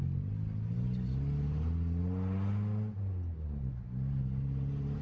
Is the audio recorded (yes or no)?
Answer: yes